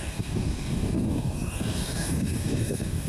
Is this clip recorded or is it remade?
remade